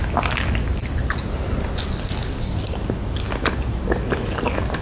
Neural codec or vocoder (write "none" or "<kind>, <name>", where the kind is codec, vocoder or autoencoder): none